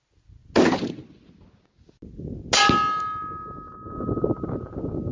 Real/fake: real